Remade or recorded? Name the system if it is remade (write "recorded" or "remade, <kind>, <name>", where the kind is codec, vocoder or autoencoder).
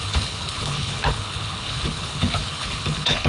remade, codec, HILCodec